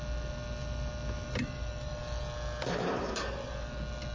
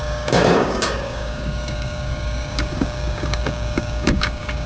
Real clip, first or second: first